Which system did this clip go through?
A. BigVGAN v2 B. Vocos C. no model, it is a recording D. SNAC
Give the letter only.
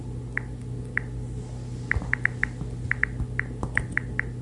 C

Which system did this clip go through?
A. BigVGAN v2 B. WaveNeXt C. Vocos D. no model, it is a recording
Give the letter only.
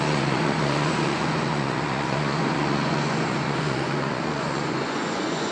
C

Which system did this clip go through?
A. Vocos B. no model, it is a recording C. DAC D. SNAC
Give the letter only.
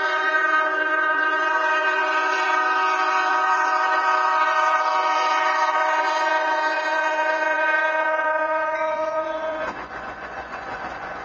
A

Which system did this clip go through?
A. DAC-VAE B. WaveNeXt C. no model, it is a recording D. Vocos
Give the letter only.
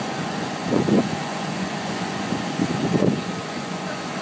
D